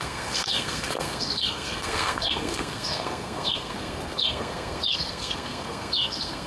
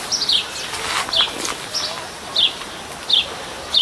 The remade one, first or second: first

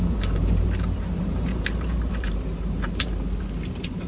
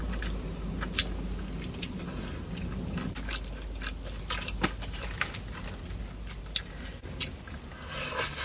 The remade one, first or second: first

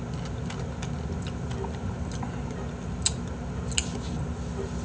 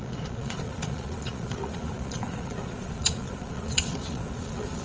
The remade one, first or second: second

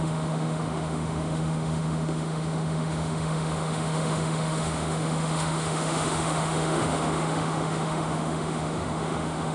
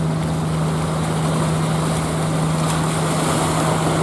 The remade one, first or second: first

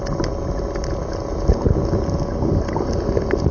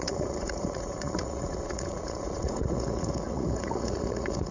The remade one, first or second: second